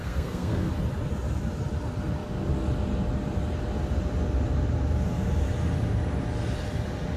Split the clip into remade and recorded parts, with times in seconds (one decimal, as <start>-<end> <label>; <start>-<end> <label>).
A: 0.0-0.7 remade; 0.7-7.2 recorded